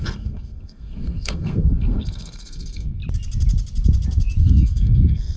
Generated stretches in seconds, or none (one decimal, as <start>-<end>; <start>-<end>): 0.0-3.0; 4.4-5.4